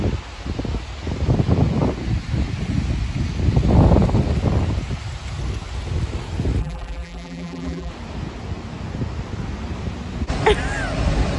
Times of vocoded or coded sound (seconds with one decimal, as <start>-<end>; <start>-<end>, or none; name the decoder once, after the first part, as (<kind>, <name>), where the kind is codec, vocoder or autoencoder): 6.6-7.9 (vocoder, BigVGAN v2)